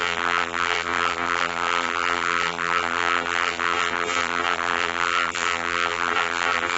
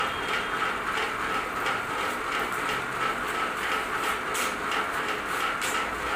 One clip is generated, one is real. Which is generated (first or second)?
first